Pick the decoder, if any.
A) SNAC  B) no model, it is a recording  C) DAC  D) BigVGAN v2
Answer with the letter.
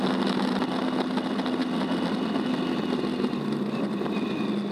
B